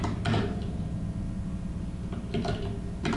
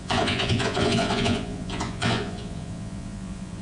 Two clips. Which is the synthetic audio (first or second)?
second